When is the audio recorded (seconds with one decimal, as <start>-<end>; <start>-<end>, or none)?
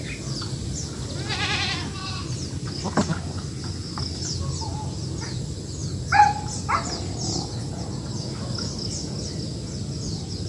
0.0-10.5